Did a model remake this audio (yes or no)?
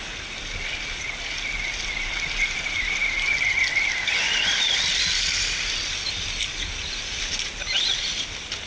no